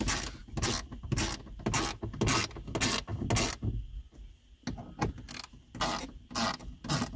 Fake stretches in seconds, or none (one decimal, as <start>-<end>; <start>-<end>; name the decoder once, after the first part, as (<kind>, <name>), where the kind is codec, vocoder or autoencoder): none